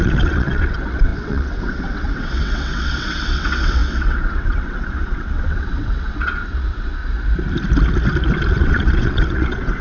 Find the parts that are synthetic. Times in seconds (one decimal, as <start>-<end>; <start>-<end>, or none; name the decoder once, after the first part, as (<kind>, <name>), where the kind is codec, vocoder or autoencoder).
0.0-7.0 (vocoder, WaveNeXt); 8.5-9.8

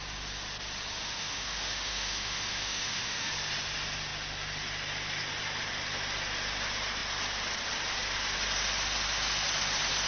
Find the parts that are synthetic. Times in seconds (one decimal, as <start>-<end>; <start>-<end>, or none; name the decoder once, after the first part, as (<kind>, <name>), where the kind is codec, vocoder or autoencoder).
1.0-3.3 (autoencoder, DAC-VAE)